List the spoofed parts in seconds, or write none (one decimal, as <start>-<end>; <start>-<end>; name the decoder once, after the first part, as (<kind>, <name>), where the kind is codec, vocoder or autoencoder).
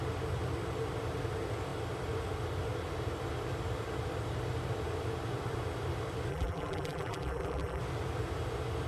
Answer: 6.3-7.8 (vocoder, BigVGAN v2)